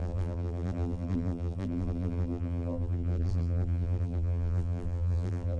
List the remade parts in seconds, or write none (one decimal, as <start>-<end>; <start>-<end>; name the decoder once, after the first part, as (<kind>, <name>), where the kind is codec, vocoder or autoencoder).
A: 0.0-5.6 (vocoder, BigVGAN v2)